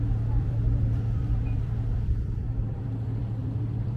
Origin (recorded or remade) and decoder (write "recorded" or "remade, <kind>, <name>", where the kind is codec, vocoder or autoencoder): remade, vocoder, BigVGAN v2